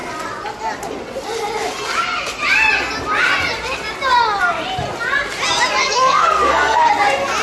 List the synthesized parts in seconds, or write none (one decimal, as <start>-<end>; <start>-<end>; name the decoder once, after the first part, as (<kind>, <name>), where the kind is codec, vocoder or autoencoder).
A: 5.8-6.9 (codec, SNAC)